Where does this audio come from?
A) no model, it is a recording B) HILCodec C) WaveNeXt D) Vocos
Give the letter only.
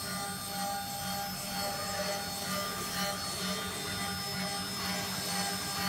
A